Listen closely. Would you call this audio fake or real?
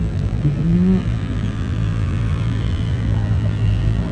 fake